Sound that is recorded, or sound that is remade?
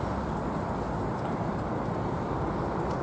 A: recorded